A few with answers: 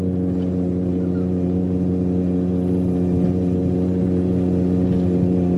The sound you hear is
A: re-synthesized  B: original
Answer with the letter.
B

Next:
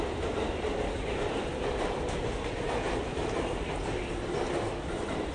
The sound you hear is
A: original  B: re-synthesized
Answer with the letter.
B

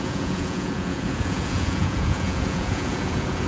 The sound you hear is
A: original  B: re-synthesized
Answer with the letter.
B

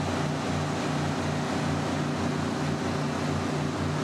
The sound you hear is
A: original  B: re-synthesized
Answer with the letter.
A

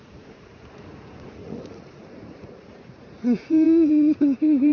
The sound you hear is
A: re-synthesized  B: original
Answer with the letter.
A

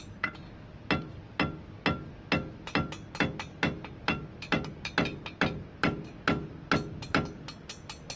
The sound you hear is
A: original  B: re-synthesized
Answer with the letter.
A